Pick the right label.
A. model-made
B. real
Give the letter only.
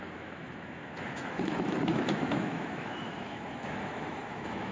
A